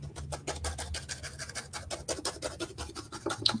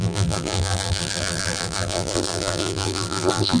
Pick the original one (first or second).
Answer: first